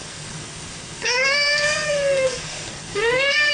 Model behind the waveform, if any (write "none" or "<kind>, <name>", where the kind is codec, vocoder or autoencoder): codec, SNAC